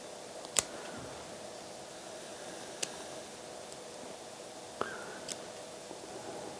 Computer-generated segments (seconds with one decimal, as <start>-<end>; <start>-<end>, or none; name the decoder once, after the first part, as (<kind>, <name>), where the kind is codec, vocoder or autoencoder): none